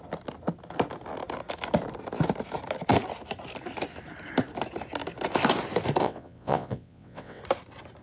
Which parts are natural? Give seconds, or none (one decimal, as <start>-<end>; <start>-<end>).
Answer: 0.0-6.0; 7.4-8.0